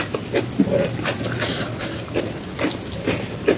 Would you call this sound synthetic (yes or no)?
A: no